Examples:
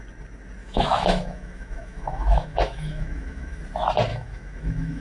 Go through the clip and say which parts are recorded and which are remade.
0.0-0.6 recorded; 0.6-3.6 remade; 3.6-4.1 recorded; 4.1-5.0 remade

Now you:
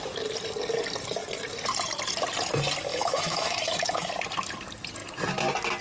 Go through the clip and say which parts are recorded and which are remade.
0.0-2.9 recorded; 2.9-4.1 remade; 4.1-5.8 recorded

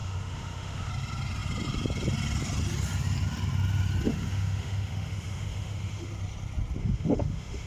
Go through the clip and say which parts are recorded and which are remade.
0.0-0.9 remade; 0.9-4.1 recorded; 4.1-6.1 remade; 6.1-6.8 recorded; 6.8-7.7 remade

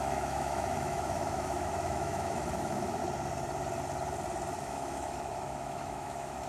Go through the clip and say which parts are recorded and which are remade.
0.0-3.0 remade; 3.0-4.6 recorded; 4.6-6.5 remade

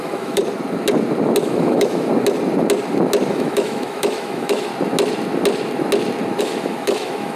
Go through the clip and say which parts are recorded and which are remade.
0.0-0.4 remade; 0.4-1.4 recorded; 1.4-2.1 remade; 2.1-3.3 recorded; 3.3-4.7 remade; 4.7-6.4 recorded; 6.4-7.3 remade